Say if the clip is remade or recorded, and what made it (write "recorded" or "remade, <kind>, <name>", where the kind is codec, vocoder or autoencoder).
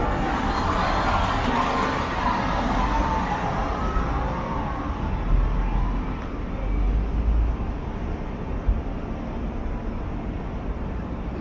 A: recorded